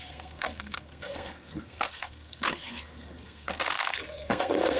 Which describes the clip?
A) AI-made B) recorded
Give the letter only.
A